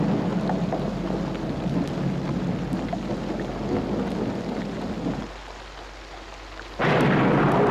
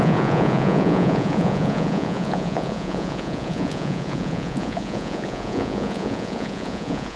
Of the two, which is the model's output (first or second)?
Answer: second